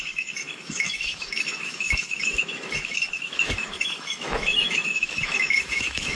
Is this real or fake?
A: fake